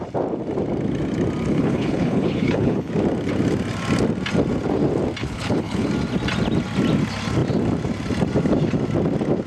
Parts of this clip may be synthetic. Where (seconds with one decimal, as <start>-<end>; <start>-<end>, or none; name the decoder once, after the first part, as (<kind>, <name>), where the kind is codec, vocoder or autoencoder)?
1.5-2.9 (codec, HILCodec); 5.2-5.9